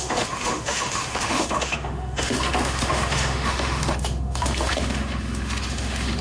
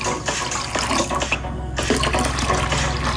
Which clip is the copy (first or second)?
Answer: first